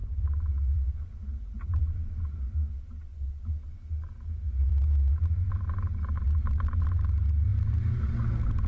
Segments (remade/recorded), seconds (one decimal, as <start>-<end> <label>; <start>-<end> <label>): 0.0-2.7 remade; 2.7-3.1 recorded; 3.1-4.1 remade; 4.1-4.7 recorded; 4.7-6.4 remade; 6.4-8.7 recorded